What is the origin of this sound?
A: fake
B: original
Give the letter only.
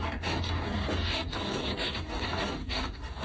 A